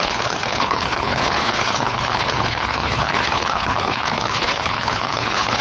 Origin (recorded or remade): remade